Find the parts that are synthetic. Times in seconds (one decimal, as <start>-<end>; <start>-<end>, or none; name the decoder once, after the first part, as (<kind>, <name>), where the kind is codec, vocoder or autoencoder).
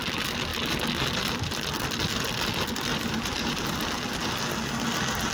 2.9-3.8 (vocoder, BigVGAN v2)